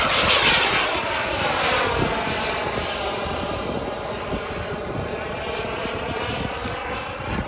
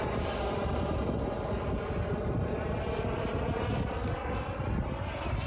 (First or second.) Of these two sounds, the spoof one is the first